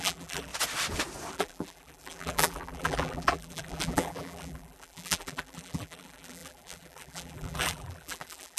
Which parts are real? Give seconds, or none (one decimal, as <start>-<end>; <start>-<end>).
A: 0.5-1.3